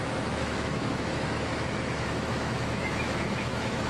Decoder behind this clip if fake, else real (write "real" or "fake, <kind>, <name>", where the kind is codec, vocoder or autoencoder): fake, autoencoder, DAC-VAE